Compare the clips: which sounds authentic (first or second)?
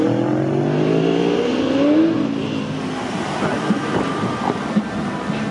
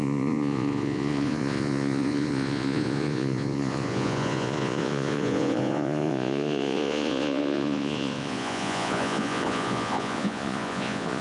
first